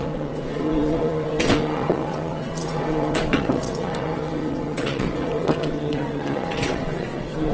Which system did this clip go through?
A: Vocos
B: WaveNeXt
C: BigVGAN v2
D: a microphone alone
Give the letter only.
B